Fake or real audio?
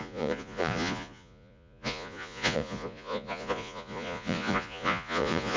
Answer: fake